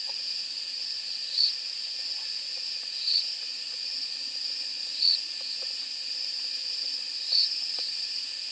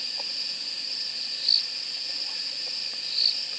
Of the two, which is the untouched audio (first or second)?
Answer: second